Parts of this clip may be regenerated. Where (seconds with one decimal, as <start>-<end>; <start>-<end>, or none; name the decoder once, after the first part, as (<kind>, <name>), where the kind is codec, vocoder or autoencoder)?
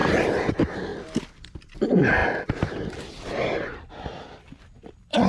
0.0-0.5 (vocoder, BigVGAN v2); 2.2-5.3